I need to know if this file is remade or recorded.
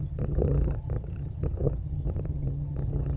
remade